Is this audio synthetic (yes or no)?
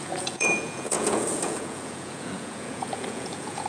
yes